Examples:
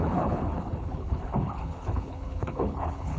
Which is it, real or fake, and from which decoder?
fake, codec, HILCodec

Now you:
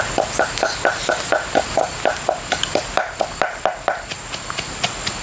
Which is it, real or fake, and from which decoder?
real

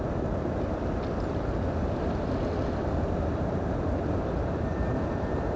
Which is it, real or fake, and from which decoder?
real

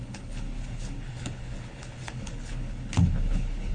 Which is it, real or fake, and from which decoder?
fake, codec, HILCodec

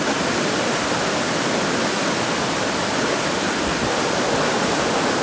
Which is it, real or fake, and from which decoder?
real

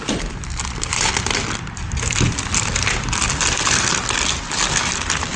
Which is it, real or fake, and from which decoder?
real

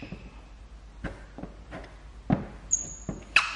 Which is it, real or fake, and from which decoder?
real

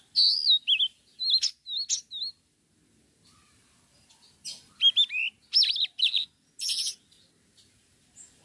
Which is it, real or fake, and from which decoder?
real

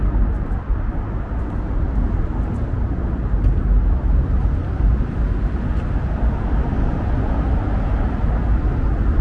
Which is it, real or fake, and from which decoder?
real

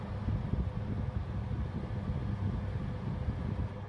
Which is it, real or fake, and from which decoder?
real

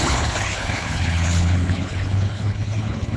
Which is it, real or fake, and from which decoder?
fake, codec, HILCodec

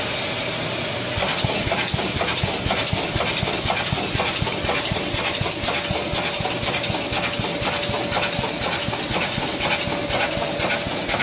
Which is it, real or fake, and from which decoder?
real